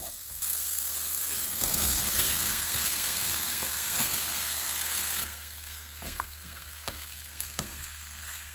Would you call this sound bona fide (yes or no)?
no